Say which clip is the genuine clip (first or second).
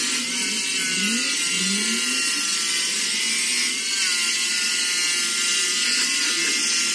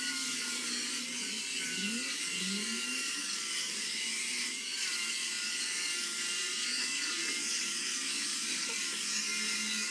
first